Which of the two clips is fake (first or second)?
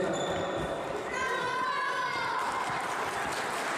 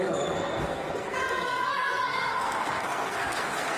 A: second